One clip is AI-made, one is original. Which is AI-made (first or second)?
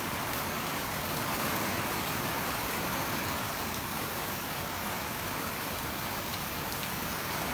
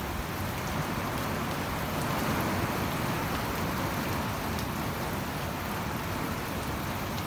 first